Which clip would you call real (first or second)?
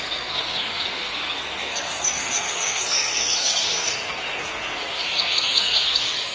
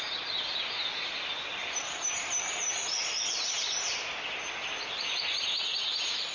second